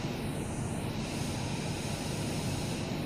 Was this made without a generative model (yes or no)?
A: yes